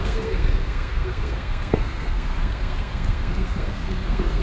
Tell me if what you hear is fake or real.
fake